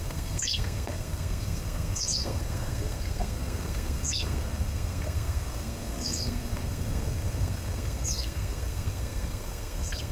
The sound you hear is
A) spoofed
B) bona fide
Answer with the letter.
A